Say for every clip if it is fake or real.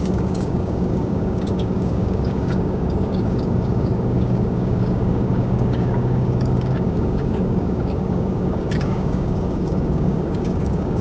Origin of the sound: fake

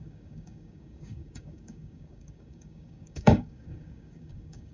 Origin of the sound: fake